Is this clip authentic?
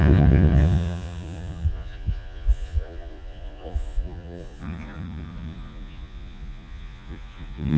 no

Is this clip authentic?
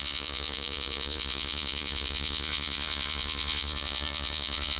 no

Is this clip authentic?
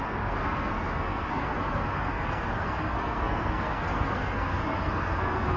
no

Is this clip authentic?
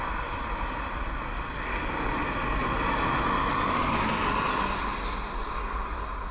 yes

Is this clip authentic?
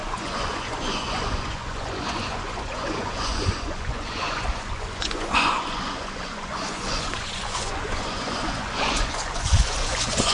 no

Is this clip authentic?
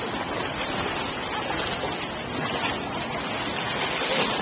yes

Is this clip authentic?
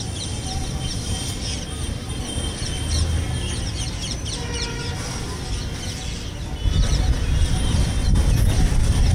yes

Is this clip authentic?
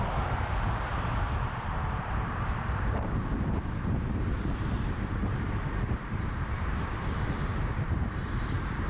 no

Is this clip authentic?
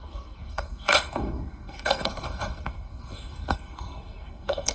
no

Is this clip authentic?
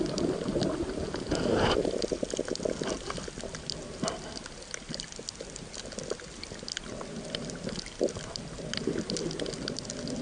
yes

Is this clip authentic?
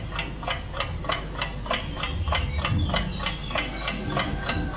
yes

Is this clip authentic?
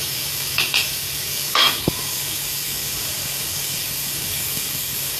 no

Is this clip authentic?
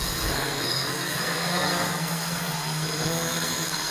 no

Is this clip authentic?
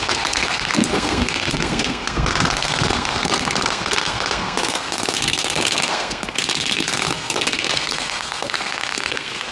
no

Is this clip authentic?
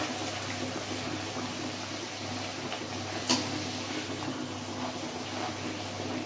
yes